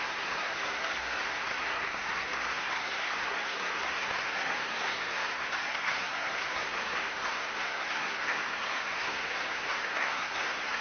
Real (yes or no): no